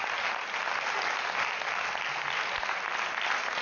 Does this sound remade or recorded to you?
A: recorded